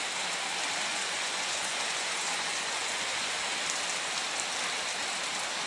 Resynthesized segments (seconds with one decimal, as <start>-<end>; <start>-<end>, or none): 0.9-3.4